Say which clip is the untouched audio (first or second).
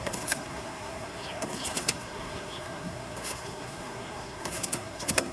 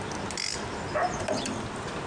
second